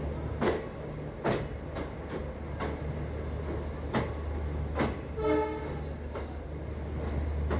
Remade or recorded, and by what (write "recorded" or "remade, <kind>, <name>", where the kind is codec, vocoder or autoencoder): recorded